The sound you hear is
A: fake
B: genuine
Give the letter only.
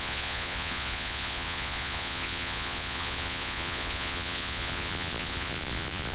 A